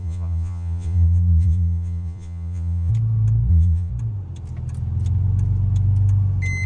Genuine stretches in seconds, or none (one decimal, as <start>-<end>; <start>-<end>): 2.9-3.5; 3.9-6.7